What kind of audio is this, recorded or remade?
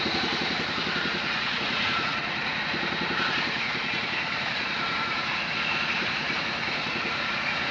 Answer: remade